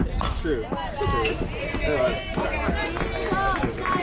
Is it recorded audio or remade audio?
recorded